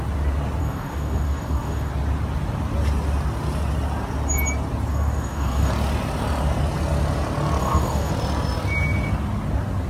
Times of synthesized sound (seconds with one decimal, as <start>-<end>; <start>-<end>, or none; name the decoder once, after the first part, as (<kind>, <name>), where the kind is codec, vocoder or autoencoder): 0.6-1.9 (codec, DAC); 4.9-5.7; 7.6-8.1